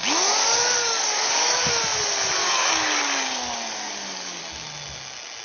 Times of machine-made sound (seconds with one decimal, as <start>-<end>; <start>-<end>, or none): 0.4-1.7; 2.4-4.4